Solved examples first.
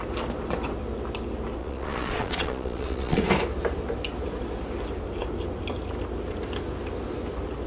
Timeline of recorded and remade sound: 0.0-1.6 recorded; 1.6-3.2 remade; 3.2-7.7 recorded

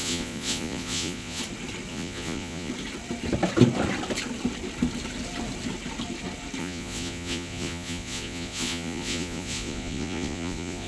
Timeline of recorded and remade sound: 0.0-1.4 remade; 1.4-1.9 recorded; 1.9-2.7 remade; 2.7-6.6 recorded; 6.6-10.9 remade

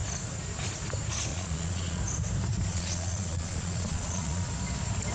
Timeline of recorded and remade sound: 0.0-1.3 recorded; 1.3-2.0 remade; 2.0-2.7 recorded; 2.7-4.5 remade; 4.5-5.1 recorded

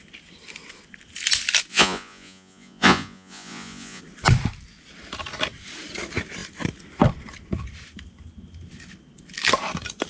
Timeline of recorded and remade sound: 0.0-1.7 recorded; 1.7-4.0 remade; 4.0-10.1 recorded

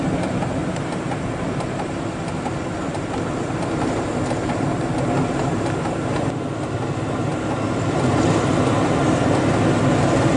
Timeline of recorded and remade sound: 0.0-10.4 recorded